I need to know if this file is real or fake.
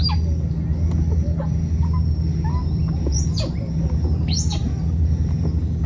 real